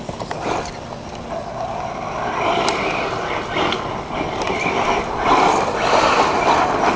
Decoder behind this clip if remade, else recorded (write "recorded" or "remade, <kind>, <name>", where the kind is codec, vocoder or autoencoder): recorded